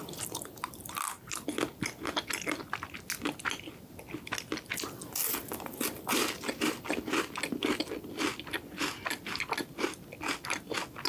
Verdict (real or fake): real